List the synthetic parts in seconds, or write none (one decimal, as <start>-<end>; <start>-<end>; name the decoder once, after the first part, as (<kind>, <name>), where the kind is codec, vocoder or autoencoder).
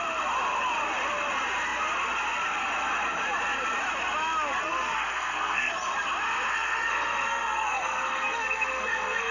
4.6-5.7 (codec, SNAC); 6.5-9.3